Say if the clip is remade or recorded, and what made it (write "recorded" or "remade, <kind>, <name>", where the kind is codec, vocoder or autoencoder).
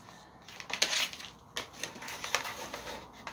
recorded